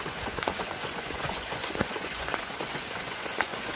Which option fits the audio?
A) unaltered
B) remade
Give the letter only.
B